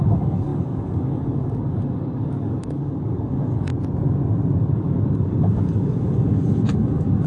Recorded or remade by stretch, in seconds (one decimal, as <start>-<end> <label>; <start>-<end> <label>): 0.0-3.7 remade; 3.7-4.6 recorded; 4.6-7.3 remade